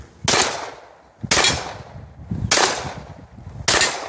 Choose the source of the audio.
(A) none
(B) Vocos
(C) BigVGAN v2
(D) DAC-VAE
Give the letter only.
A